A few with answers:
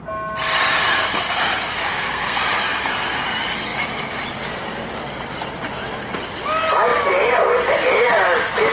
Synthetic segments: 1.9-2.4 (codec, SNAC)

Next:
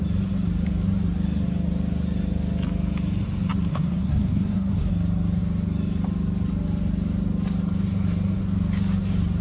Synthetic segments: 3.7-4.9 (codec, SNAC)

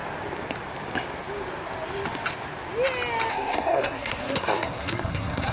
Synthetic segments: 3.3-5.5 (codec, SNAC)

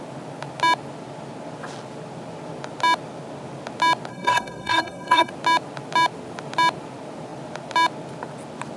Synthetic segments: 4.1-5.3 (codec, SNAC)

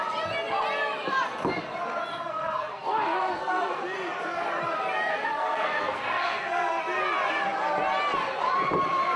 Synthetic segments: 2.1-3.8 (codec, SNAC); 5.1-6.8

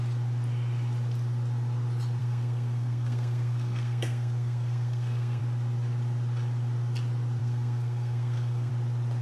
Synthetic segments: 2.2-5.4 (codec, SNAC); 7.4-8.7

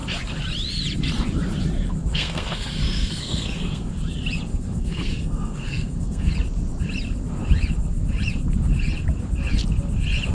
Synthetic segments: 2.1-3.9 (codec, SNAC); 4.5-6.3

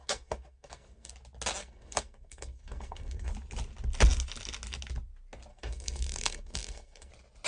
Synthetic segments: 0.0-1.1 (codec, SNAC); 1.6-3.3; 5.5-7.1